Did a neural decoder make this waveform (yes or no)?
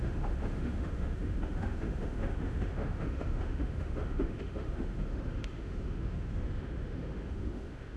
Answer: yes